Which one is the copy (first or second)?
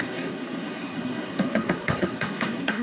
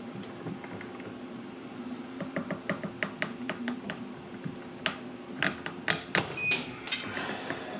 first